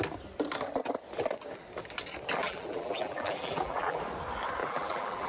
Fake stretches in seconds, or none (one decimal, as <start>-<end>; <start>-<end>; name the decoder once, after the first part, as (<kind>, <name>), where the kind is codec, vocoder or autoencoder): 2.4-4.0 (vocoder, BigVGAN v2); 4.6-5.3